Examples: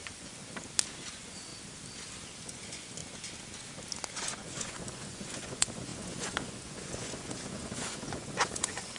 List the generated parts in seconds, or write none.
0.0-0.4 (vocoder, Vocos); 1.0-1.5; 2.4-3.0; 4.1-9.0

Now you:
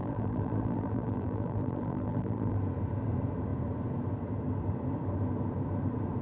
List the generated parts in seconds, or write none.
0.0-2.6 (vocoder, BigVGAN v2)

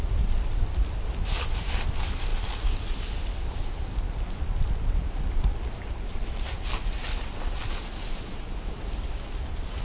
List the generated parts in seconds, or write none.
none

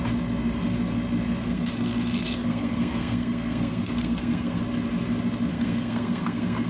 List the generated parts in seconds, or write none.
1.4-4.6 (codec, SNAC); 5.5-6.7

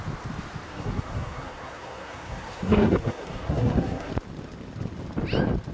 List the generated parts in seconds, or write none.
0.7-4.1 (codec, SNAC)

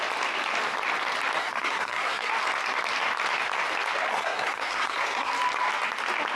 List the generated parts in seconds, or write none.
1.4-2.3 (codec, SNAC); 4.1-5.3

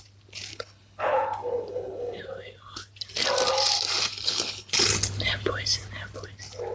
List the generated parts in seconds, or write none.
0.5-2.2 (codec, HILCodec); 4.1-4.7